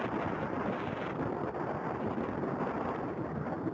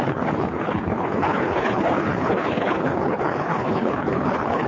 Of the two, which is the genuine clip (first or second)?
first